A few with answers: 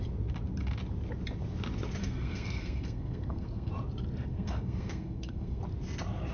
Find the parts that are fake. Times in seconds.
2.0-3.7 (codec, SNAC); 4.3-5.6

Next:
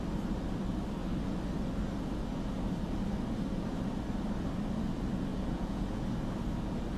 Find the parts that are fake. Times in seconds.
5.3-6.0 (vocoder, Vocos)

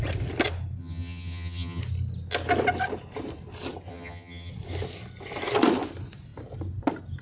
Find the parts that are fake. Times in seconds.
0.8-1.8 (vocoder, HiFi-GAN); 3.9-4.5

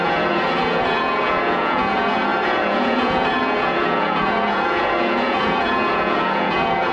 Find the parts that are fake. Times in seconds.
0.0-6.9 (vocoder, Vocos)